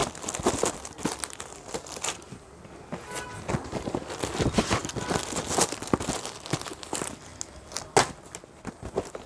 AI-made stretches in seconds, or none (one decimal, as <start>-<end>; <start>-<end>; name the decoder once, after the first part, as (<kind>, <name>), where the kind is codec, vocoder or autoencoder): none